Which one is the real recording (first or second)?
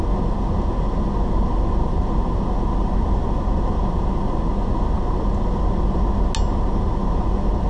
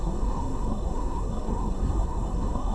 first